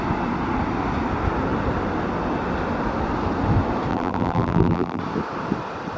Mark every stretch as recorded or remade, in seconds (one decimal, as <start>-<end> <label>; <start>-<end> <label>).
0.0-3.9 recorded; 3.9-5.0 remade; 5.0-6.0 recorded